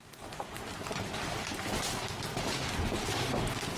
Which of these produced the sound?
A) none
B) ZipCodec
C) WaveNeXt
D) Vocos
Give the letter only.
A